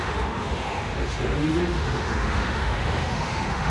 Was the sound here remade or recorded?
remade